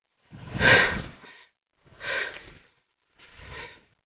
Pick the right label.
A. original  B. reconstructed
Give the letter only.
B